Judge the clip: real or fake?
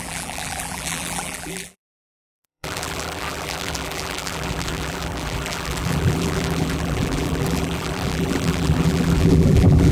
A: fake